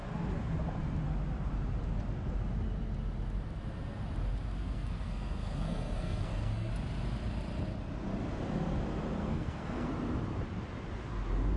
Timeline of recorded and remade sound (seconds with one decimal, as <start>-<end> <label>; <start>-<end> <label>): 0.0-4.6 recorded; 4.6-6.7 remade; 6.7-9.2 recorded; 9.2-9.9 remade; 9.9-11.6 recorded